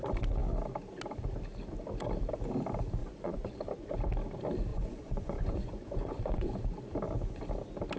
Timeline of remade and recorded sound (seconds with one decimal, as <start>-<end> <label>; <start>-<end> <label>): 0.0-3.0 recorded; 3.0-3.6 remade; 3.6-4.7 recorded; 4.7-6.5 remade; 6.5-8.0 recorded